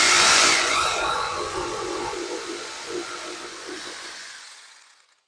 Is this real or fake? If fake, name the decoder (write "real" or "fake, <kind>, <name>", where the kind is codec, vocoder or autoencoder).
fake, vocoder, Vocos